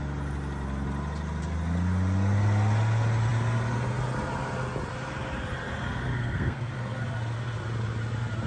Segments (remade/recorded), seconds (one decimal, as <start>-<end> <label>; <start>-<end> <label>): 0.0-6.1 recorded; 6.1-6.7 remade; 6.7-8.5 recorded